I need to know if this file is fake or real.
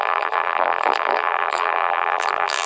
fake